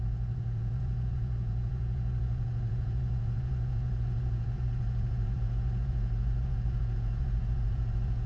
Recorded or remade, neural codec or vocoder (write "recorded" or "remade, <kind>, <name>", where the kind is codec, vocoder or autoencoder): remade, vocoder, Vocos